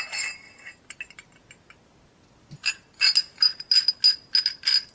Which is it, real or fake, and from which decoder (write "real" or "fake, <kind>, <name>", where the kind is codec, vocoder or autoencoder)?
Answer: real